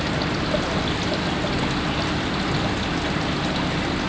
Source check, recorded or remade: recorded